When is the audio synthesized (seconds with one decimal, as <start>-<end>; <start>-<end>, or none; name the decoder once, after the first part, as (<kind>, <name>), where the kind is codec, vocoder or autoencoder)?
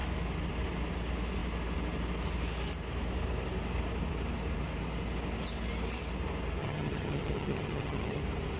6.6-8.2 (vocoder, HiFi-GAN)